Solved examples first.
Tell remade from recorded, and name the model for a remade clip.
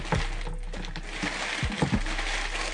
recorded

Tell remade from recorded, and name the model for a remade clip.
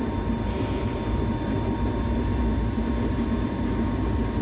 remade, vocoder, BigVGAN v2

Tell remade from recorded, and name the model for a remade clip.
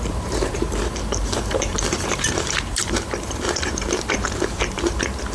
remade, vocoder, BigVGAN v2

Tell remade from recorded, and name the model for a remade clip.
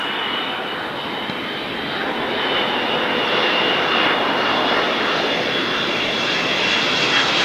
remade, vocoder, BigVGAN v2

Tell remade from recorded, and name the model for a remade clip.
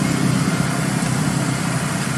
recorded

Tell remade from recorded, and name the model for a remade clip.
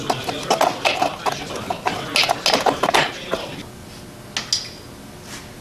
recorded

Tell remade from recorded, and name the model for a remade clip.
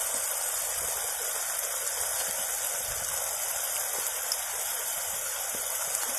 recorded